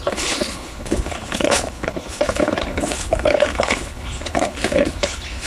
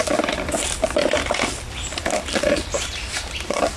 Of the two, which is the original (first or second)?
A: second